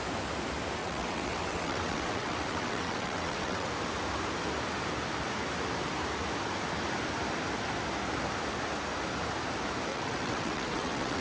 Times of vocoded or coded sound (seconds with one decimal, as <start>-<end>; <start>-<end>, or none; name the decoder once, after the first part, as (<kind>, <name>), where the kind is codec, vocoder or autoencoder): 0.8-3.7 (vocoder, WaveNeXt); 9.9-11.2